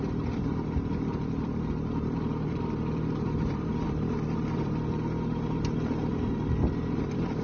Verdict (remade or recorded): remade